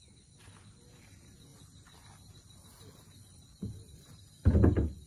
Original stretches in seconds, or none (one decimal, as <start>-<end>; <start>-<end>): 0.0-5.1